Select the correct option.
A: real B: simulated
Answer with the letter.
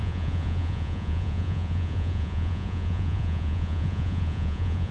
B